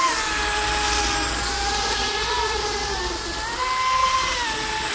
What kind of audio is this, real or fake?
real